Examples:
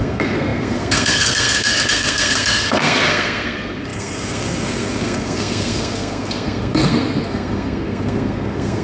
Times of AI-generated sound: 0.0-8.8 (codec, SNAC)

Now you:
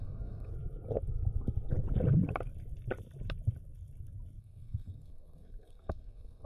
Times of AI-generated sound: 0.0-0.5 (codec, SNAC); 4.4-6.5

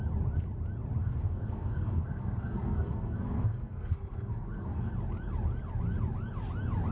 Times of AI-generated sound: 1.0-4.9 (codec, SNAC)

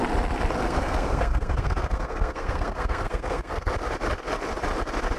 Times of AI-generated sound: 0.6-3.7 (codec, SNAC)

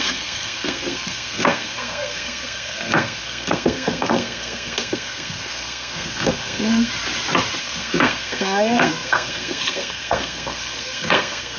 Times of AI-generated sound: 0.0-6.9 (codec, SNAC); 7.6-11.6

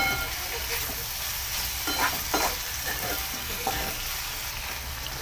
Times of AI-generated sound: 3.4-3.9 (codec, SNAC)

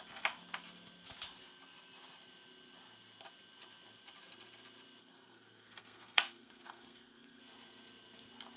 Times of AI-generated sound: 5.0-7.4 (codec, SNAC)

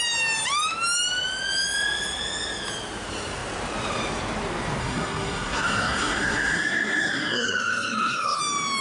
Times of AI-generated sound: 4.8-8.4 (codec, SNAC)